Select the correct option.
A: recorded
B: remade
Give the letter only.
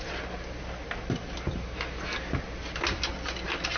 A